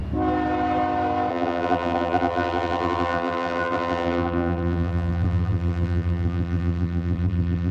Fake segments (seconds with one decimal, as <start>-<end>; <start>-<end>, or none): 1.3-7.7